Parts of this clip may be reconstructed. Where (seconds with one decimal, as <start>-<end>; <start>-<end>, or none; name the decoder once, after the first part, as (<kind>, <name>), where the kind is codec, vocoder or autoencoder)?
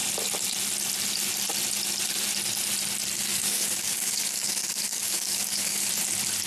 3.3-5.9 (codec, DAC)